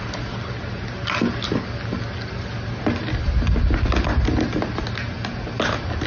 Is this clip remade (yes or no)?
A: no